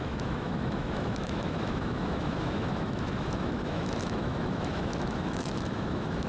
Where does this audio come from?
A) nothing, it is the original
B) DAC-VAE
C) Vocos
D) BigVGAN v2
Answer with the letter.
B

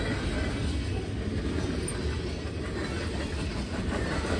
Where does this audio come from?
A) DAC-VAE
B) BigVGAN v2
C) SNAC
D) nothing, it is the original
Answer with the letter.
D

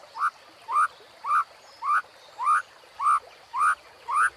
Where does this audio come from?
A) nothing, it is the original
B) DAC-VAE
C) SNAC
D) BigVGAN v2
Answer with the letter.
A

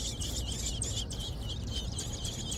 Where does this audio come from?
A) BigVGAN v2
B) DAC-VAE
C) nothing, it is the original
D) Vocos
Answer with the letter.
C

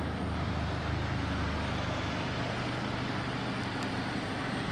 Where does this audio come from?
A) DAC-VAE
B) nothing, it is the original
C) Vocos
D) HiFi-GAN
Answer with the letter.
B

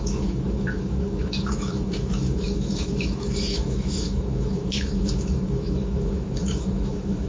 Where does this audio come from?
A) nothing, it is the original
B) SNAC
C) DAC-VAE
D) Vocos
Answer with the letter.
C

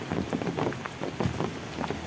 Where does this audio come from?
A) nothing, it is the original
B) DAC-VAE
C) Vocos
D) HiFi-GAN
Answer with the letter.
A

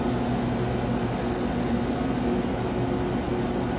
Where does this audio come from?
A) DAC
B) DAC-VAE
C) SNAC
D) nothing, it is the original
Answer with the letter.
D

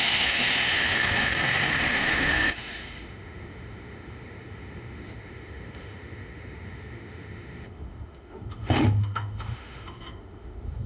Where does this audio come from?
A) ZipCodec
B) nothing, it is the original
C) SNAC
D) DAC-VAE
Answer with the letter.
D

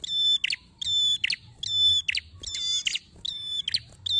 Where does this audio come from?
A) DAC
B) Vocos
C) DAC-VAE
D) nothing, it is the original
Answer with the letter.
D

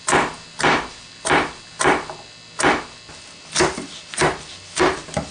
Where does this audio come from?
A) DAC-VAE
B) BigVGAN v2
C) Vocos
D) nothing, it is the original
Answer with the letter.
D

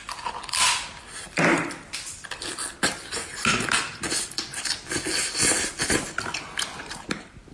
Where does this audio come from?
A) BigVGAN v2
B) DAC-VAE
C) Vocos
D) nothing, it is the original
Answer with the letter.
D